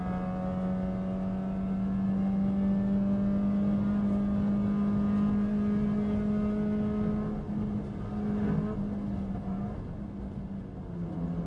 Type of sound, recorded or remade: recorded